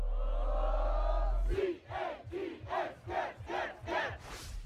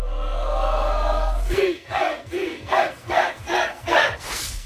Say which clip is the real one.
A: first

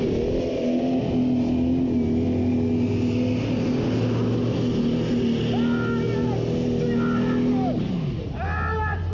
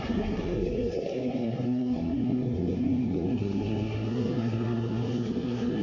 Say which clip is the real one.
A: first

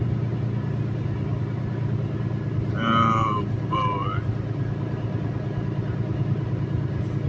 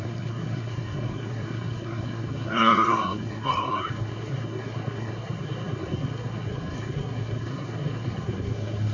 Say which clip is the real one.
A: first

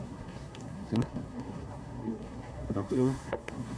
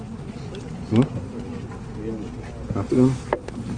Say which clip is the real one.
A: second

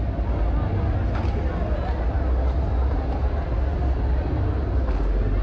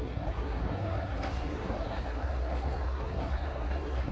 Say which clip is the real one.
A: first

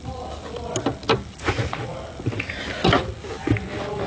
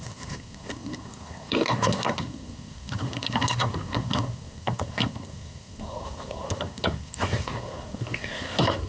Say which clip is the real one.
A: first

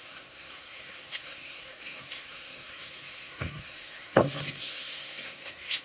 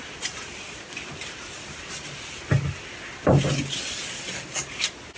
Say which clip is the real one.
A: second